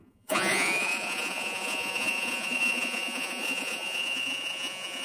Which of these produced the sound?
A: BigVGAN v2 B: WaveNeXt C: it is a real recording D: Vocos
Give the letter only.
D